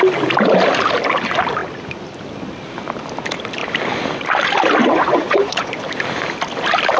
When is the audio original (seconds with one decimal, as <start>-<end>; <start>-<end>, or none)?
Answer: 0.0-4.8; 5.8-7.0